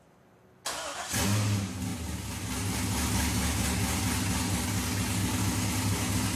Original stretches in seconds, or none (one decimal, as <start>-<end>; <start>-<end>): 0.0-6.4